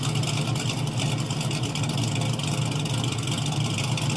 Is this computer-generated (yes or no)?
no